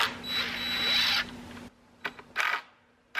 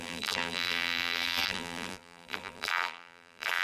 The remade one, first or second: second